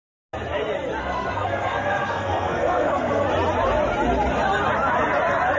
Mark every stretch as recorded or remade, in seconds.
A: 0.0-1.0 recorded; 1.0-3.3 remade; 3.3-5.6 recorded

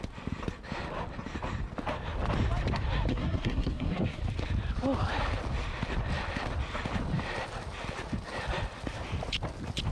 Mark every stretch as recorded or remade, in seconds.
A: 0.0-3.1 recorded; 3.1-4.2 remade; 4.2-9.9 recorded

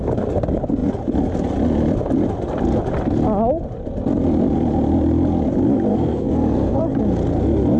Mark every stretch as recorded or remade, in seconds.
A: 0.0-5.9 recorded; 5.9-6.8 remade; 6.8-7.8 recorded

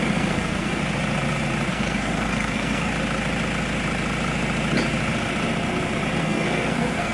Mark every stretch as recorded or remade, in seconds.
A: 0.0-0.8 remade; 0.8-1.7 recorded; 1.7-2.9 remade; 2.9-6.2 recorded; 6.2-7.1 remade

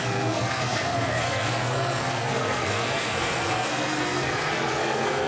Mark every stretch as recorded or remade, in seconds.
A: 0.0-5.3 remade

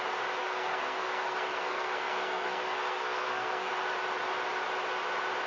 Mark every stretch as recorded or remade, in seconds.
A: 0.0-0.4 recorded; 0.4-3.7 remade; 3.7-5.5 recorded

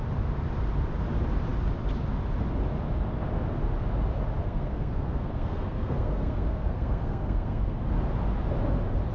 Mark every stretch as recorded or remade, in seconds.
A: 0.0-4.4 recorded; 4.4-7.8 remade; 7.8-9.1 recorded